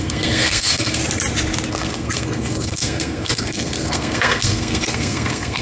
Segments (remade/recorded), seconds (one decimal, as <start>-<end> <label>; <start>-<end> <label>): 0.0-1.0 remade; 1.0-1.7 recorded; 1.7-5.6 remade